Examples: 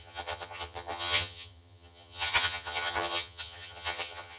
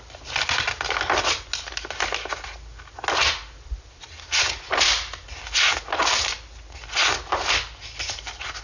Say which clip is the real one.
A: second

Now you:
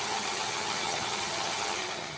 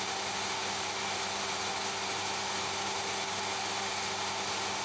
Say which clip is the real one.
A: second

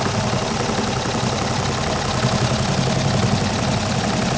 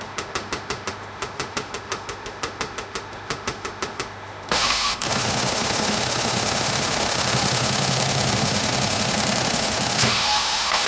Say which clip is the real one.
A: first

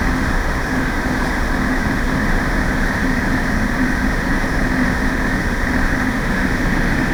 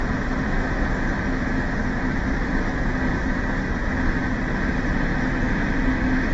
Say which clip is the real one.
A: second